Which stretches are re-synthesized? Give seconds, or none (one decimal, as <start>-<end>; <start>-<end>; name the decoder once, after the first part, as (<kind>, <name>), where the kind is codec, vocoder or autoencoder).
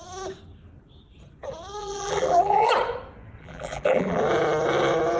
1.8-2.7 (vocoder, BigVGAN v2); 3.4-4.2